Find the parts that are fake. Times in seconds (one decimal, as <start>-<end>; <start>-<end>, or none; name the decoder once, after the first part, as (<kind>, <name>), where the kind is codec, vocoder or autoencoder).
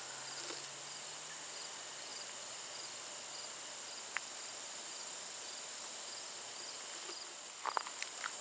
none